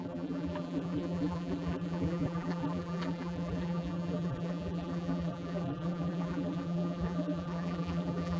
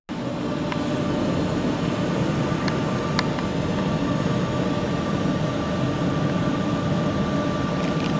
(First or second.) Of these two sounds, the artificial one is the first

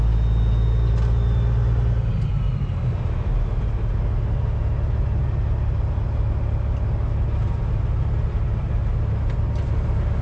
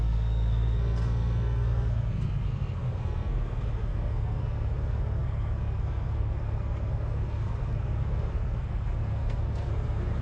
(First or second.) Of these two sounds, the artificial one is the second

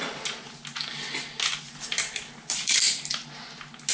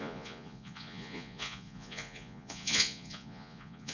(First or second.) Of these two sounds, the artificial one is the second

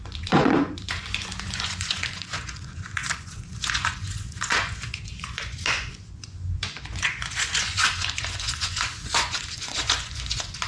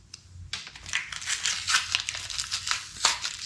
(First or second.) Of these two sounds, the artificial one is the first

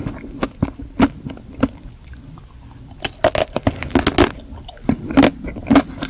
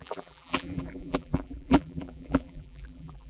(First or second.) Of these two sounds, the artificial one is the second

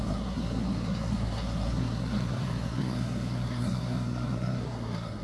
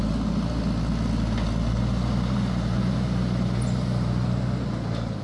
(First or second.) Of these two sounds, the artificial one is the first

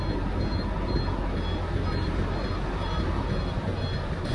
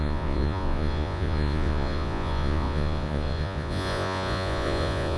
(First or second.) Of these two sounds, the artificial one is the second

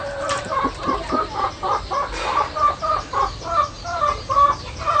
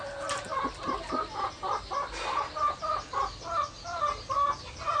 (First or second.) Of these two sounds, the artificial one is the first